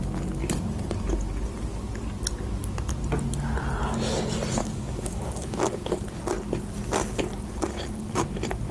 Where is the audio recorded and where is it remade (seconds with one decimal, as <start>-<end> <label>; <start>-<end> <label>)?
0.0-4.6 recorded; 4.6-6.0 remade; 6.0-8.7 recorded

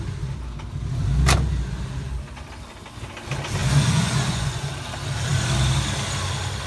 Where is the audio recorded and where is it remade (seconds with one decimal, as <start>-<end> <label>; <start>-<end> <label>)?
0.0-3.6 recorded; 3.6-4.7 remade; 4.7-6.7 recorded

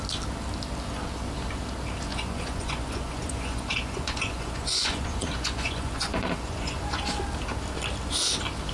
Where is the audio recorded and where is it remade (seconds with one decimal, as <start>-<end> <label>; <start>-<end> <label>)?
0.0-2.1 recorded; 2.1-7.0 remade; 7.0-8.7 recorded

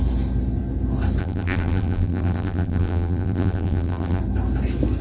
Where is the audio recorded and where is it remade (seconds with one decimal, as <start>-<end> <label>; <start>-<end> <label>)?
0.0-1.2 recorded; 1.2-4.2 remade; 4.2-5.0 recorded

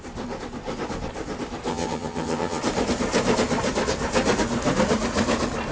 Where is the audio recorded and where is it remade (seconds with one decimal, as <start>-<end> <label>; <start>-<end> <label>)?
0.0-1.7 recorded; 1.7-2.6 remade; 2.6-5.7 recorded

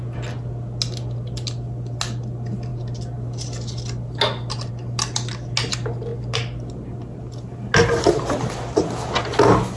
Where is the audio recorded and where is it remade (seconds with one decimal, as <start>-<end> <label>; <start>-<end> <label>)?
0.0-9.8 recorded

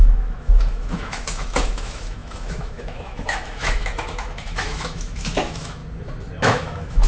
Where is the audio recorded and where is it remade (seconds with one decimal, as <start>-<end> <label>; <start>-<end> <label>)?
0.0-5.8 remade; 5.8-6.4 recorded; 6.4-7.1 remade